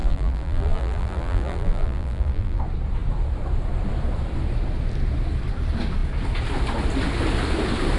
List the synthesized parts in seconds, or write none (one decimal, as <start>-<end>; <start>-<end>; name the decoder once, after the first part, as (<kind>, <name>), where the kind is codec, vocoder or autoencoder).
0.0-2.6 (vocoder, BigVGAN v2)